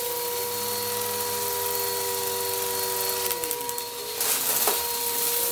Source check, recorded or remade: recorded